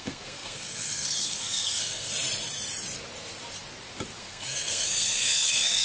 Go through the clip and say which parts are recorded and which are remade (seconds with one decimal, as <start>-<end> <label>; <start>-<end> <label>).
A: 0.0-2.1 remade; 2.1-4.2 recorded; 4.2-5.8 remade